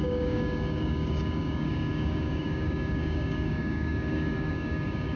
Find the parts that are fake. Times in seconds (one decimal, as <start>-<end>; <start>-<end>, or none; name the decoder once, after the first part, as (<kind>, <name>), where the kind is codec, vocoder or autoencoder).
0.0-5.2 (codec, DAC)